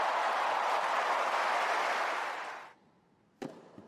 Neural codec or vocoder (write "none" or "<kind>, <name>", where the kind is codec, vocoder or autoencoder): none